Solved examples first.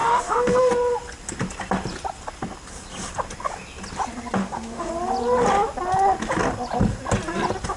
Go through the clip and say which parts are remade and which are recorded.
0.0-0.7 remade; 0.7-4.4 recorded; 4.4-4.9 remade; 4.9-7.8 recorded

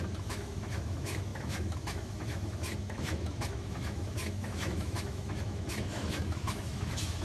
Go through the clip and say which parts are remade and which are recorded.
0.0-7.2 remade

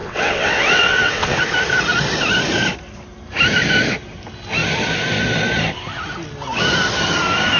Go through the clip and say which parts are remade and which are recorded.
0.0-1.4 remade; 1.4-7.6 recorded

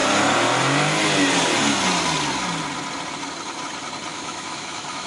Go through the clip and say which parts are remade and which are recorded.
0.0-4.1 recorded; 4.1-5.1 remade

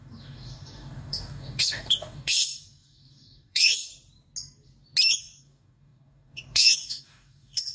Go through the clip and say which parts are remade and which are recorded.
0.0-3.9 remade; 3.9-5.2 recorded; 5.2-7.7 remade

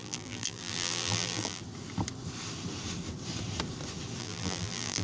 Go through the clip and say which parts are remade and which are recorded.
0.0-1.6 remade; 1.6-4.2 recorded; 4.2-5.0 remade